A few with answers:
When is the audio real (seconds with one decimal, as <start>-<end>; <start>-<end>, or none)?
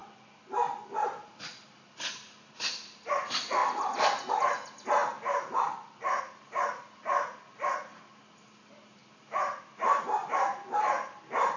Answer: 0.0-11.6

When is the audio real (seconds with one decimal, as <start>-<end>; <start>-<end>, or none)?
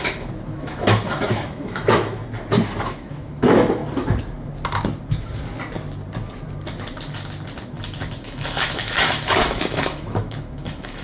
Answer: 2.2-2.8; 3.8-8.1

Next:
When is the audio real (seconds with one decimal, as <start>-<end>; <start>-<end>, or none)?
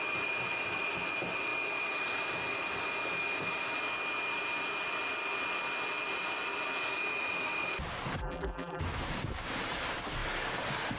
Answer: 0.0-8.2; 8.8-11.0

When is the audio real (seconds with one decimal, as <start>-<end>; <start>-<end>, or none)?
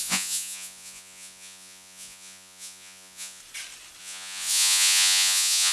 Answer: 3.4-4.0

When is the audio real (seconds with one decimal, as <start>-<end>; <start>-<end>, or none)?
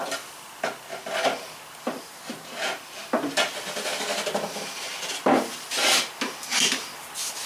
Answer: 0.0-7.5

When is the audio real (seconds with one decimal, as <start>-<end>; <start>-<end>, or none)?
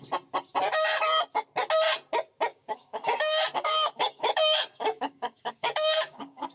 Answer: 0.0-2.5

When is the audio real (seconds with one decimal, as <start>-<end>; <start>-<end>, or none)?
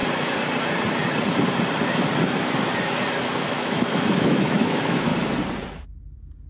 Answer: 0.0-3.5; 5.1-6.5